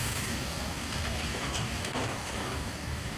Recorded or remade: remade